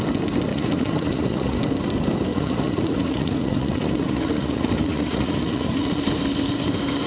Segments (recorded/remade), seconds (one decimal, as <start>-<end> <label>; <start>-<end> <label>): 0.0-0.5 recorded; 0.5-1.6 remade; 1.6-2.3 recorded; 2.3-6.0 remade; 6.0-7.1 recorded